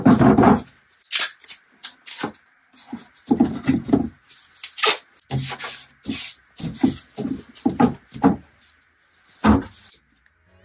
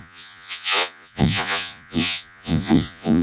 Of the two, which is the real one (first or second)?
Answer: first